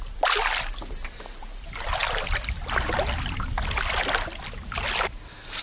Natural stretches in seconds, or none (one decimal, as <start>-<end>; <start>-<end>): 0.0-5.6